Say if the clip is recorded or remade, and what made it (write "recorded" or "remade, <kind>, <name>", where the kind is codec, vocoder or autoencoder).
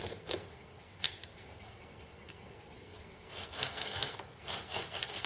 remade, codec, SNAC